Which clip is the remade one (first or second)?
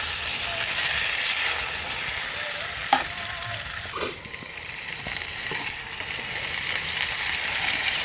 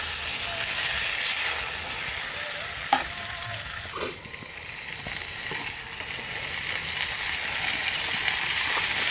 first